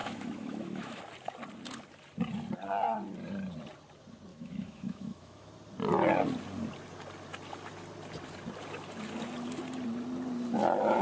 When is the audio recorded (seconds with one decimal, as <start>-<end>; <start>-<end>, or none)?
1.0-4.3; 5.5-11.0